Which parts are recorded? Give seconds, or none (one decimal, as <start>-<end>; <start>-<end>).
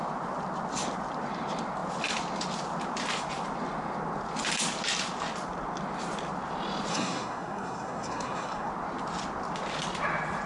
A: 0.0-6.9; 8.7-10.5